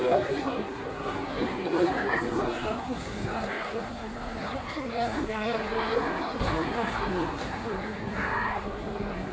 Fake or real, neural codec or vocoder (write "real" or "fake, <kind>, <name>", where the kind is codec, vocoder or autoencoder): fake, codec, SNAC